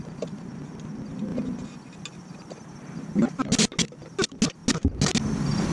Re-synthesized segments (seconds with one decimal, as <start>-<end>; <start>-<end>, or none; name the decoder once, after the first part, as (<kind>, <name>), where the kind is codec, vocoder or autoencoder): none

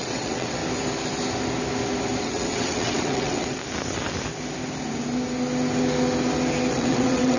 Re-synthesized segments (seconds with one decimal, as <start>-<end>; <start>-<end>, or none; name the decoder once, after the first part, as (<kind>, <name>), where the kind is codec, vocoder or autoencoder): 0.0-0.6 (vocoder, WaveNeXt); 2.2-3.6; 6.7-7.4

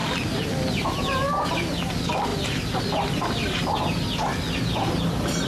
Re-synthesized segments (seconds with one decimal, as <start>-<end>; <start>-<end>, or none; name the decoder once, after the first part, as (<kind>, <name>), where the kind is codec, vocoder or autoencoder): 2.3-2.8 (vocoder, BigVGAN v2)

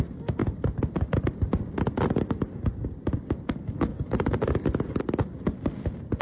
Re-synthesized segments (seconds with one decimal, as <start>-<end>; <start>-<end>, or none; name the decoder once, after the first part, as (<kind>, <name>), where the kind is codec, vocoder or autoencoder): 0.4-3.4 (vocoder, BigVGAN v2); 3.9-5.0

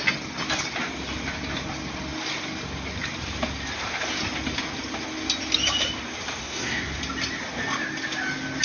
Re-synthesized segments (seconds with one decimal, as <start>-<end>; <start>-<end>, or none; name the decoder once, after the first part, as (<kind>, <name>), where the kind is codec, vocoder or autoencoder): 6.4-7.0 (codec, SNAC)